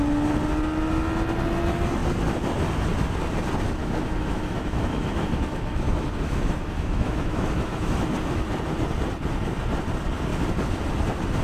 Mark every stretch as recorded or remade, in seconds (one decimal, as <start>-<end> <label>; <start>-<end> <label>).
0.0-3.8 recorded; 3.8-8.1 remade; 8.1-11.4 recorded